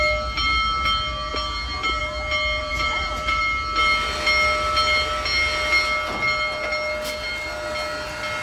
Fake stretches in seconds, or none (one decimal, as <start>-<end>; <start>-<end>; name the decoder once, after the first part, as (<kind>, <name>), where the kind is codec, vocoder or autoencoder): 2.6-3.4 (vocoder, Vocos)